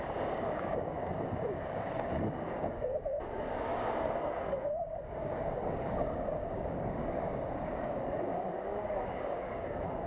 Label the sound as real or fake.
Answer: fake